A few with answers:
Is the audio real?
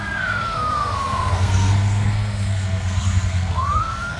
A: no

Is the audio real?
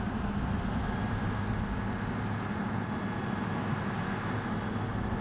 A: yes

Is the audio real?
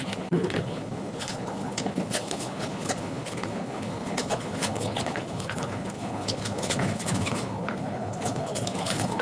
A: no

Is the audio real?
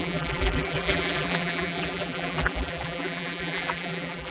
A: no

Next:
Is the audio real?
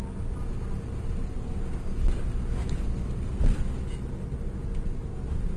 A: yes